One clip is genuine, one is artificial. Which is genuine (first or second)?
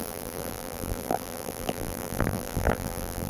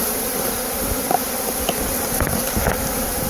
second